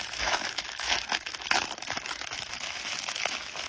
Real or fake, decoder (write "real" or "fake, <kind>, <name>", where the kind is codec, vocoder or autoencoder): fake, autoencoder, DAC-VAE